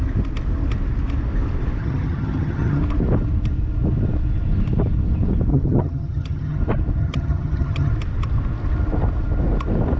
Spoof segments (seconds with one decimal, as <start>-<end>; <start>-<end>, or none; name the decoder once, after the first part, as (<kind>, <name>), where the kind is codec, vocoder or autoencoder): 1.8-2.8 (vocoder, HiFi-GAN); 5.5-6.6; 7.0-7.9